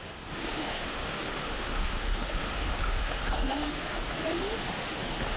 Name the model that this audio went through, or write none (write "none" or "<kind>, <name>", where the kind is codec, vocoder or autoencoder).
autoencoder, DAC-VAE